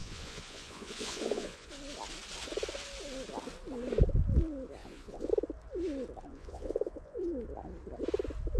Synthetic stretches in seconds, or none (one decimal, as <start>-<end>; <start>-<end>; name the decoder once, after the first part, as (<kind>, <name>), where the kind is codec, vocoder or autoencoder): 0.0-1.7 (vocoder, Vocos); 4.8-5.3; 6.3-7.2